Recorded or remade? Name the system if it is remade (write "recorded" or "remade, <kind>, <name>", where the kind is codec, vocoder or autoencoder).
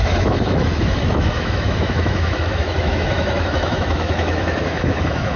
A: remade, autoencoder, DAC-VAE